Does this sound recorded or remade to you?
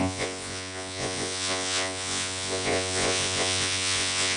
remade